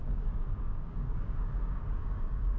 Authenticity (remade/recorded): remade